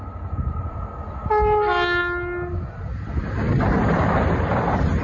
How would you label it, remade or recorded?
recorded